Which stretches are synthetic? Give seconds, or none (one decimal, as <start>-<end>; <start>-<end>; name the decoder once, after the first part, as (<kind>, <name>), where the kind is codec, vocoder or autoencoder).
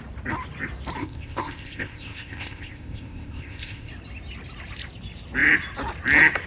1.0-3.9 (codec, ZipCodec)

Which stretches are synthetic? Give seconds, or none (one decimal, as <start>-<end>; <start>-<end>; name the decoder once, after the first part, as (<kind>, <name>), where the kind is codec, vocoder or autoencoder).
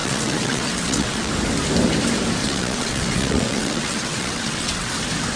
0.0-1.3 (vocoder, WaveNeXt); 2.4-4.9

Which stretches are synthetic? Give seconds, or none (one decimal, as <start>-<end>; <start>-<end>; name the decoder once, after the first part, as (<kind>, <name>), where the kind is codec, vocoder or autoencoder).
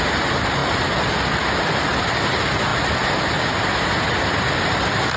none